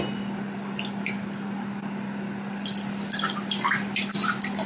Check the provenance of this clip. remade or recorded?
recorded